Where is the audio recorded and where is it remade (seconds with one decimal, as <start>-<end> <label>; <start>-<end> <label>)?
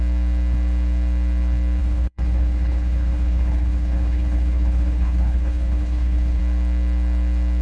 0.0-1.8 recorded; 1.8-6.4 remade; 6.4-7.6 recorded